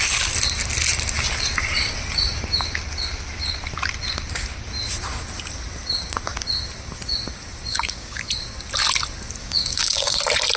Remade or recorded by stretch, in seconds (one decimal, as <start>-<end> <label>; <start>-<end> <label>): 0.0-7.7 recorded; 7.7-8.3 remade; 8.3-9.4 recorded; 9.4-10.2 remade; 10.2-10.6 recorded